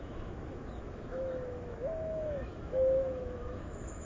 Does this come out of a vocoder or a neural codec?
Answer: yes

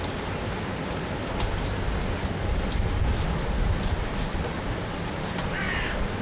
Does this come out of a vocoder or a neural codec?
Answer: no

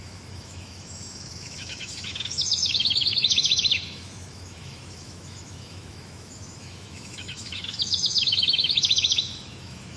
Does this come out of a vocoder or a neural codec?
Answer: yes